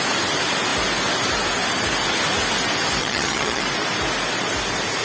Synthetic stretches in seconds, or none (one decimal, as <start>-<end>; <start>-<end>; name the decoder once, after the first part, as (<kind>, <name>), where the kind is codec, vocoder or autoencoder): 3.0-3.6 (vocoder, HiFi-GAN)